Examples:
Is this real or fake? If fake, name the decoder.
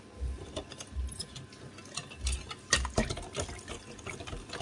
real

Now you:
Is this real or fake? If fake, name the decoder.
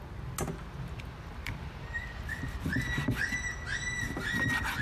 real